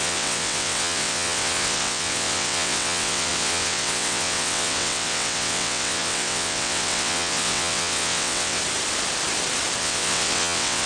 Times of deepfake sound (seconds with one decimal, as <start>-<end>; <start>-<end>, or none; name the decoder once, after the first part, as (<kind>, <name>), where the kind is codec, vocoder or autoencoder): 0.0-8.6 (vocoder, WaveNeXt); 9.8-10.9